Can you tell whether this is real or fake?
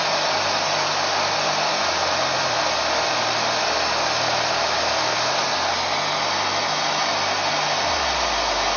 real